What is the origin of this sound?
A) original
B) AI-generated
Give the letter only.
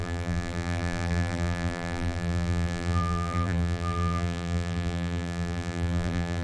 B